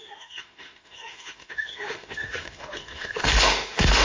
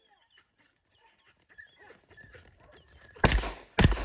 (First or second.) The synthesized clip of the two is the first